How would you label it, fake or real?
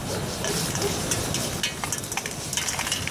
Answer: real